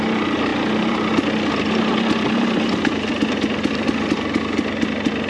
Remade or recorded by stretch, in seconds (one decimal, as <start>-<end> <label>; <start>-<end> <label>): 0.0-5.3 recorded